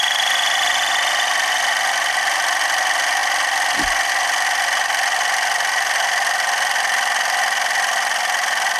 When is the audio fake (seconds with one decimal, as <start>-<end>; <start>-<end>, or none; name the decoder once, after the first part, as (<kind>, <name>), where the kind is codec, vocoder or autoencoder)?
none